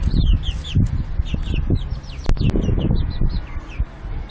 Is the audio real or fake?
real